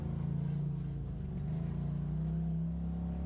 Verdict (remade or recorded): recorded